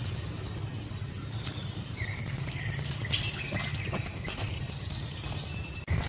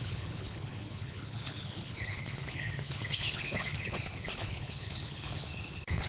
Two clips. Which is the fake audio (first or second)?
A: second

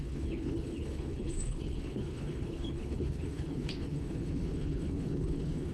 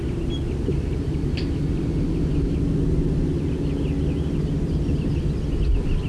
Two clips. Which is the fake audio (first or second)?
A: first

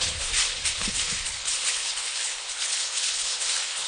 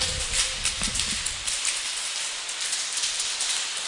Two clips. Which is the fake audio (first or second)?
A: first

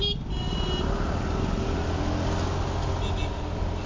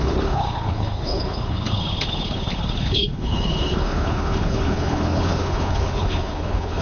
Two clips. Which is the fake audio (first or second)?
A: second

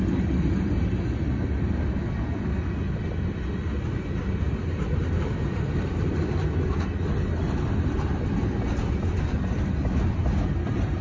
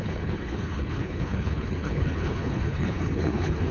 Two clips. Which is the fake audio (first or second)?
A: second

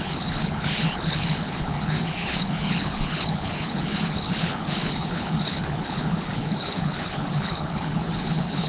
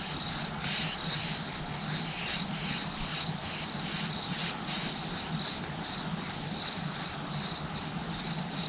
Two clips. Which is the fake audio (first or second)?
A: first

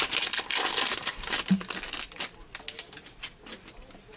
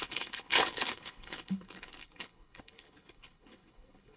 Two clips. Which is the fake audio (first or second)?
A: second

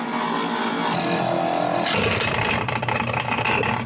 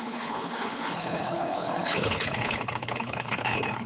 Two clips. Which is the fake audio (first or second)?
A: second